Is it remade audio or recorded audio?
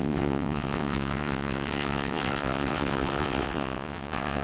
remade